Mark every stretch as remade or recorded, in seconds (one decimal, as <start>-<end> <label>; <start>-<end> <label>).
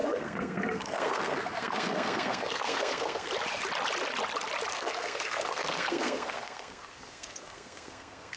0.0-3.3 remade; 3.3-4.7 recorded; 4.7-8.4 remade